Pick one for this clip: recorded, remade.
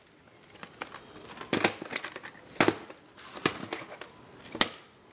recorded